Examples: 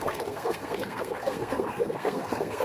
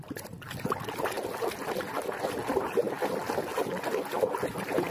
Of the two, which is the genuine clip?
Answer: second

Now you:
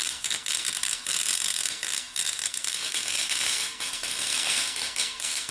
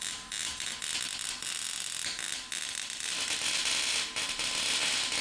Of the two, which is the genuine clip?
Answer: second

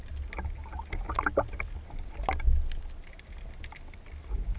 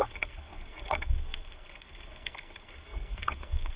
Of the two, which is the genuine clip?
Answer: first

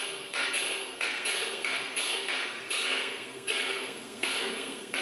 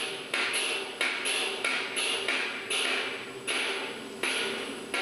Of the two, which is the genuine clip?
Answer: second